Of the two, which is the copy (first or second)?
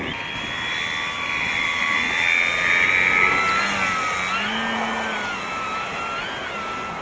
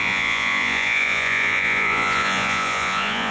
second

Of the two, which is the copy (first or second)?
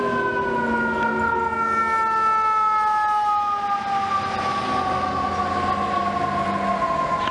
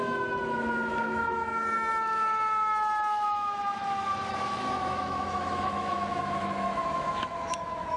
second